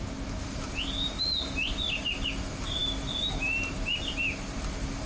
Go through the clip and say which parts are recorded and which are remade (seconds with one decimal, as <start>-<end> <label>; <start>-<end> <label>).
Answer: 0.0-5.1 recorded